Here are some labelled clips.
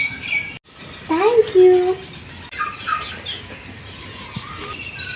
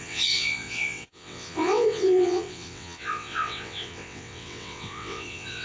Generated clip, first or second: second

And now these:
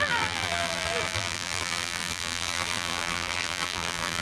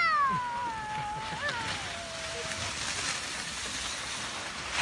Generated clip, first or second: first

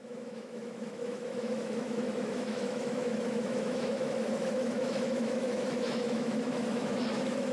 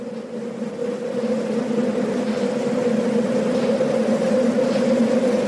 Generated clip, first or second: first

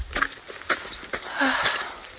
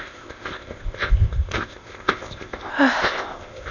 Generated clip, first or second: second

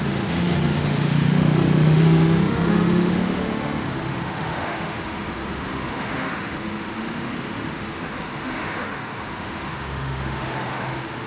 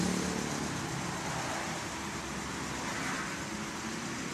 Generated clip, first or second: first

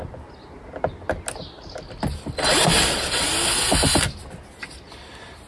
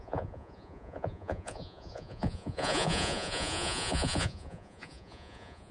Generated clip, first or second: second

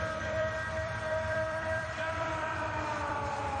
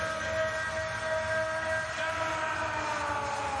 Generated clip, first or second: first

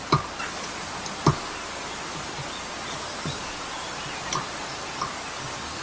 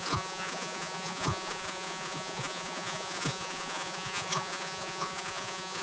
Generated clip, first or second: second